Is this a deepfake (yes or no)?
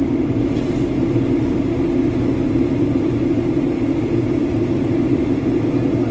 no